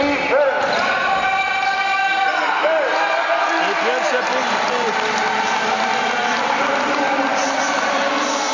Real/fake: real